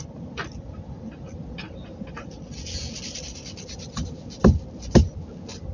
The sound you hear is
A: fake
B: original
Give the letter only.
B